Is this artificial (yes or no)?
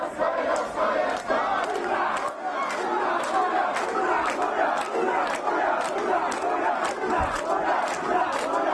no